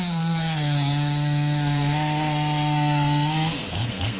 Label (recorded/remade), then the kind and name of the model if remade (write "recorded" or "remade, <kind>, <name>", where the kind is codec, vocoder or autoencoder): remade, codec, SNAC